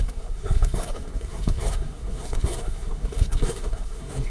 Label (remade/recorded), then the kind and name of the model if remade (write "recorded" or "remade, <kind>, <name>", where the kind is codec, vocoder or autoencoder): remade, codec, SNAC